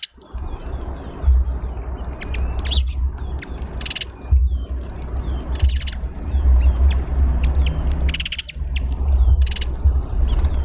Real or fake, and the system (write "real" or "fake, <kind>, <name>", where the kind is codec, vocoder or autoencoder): real